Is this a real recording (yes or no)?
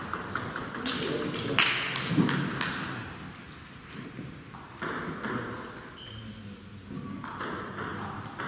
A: yes